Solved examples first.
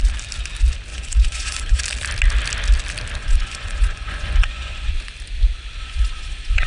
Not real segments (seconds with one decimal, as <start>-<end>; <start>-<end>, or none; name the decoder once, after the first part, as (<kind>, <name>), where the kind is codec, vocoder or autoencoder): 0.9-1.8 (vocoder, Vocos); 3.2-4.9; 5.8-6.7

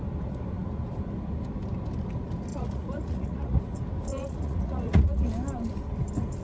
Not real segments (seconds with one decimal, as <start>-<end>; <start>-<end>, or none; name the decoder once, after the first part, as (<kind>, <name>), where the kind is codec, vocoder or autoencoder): 2.5-3.6 (vocoder, Vocos); 4.1-5.3

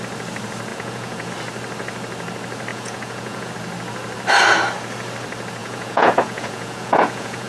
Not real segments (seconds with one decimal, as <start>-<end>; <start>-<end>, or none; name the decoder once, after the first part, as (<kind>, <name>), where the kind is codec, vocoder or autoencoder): 0.7-1.3 (vocoder, Vocos); 2.7-3.5; 5.6-7.5

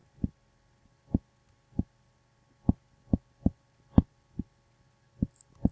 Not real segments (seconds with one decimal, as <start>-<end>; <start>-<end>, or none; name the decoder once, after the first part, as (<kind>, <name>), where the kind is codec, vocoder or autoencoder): none

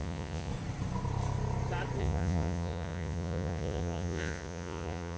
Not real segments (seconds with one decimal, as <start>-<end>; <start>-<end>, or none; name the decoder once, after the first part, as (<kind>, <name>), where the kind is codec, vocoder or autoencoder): 0.0-0.5 (vocoder, Vocos); 2.0-5.2

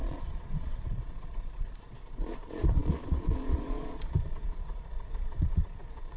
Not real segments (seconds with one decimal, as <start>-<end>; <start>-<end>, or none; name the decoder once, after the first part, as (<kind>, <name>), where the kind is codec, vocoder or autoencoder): 0.0-6.2 (vocoder, Vocos)

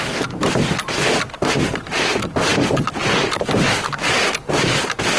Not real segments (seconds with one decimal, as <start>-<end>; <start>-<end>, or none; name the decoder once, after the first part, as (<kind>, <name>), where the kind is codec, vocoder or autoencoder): none

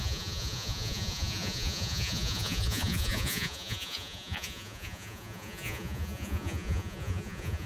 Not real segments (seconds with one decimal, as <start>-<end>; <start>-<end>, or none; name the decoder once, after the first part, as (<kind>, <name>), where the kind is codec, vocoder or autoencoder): 0.0-7.7 (vocoder, Vocos)